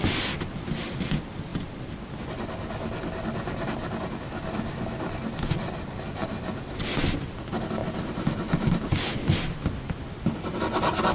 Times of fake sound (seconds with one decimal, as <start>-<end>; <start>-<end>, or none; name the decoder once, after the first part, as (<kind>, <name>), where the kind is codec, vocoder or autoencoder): none